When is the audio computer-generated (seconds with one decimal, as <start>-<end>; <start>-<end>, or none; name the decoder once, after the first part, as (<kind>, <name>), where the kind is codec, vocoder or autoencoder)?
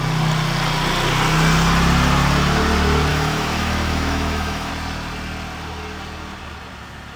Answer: 3.1-4.7 (autoencoder, DAC-VAE)